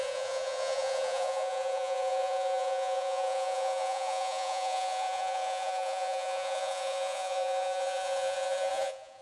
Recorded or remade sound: remade